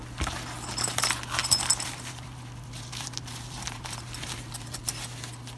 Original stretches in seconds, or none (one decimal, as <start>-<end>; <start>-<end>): 0.0-1.4; 4.8-5.6